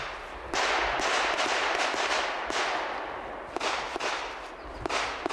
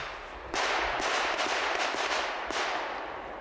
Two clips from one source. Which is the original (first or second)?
first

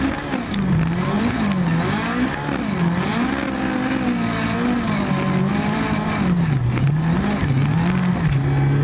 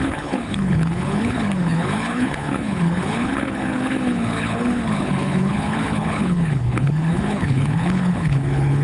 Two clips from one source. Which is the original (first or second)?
first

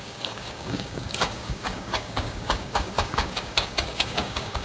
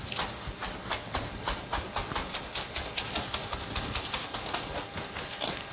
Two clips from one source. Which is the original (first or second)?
second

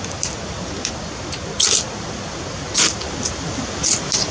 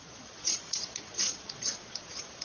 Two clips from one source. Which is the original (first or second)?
first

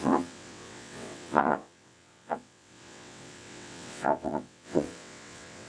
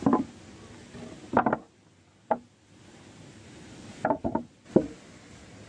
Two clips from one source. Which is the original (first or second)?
second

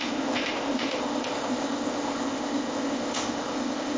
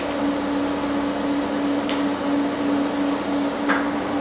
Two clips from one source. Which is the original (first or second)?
second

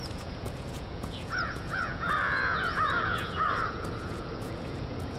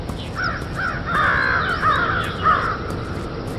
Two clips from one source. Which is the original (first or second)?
second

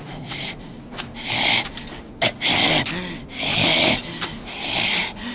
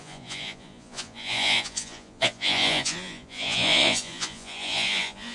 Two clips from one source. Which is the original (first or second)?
first